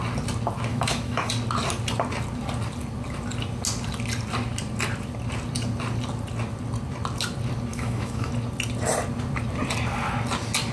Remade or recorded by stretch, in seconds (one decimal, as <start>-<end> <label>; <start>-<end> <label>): 0.0-0.7 recorded; 0.7-1.3 remade; 1.3-7.7 recorded; 7.7-8.3 remade; 8.3-10.7 recorded